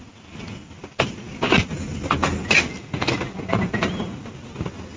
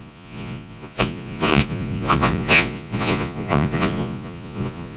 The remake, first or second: second